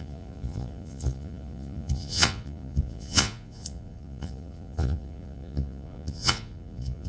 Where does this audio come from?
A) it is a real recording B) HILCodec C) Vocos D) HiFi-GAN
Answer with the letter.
C